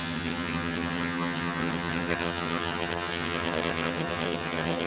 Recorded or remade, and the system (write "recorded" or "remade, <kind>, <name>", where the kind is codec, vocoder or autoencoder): remade, vocoder, HiFi-GAN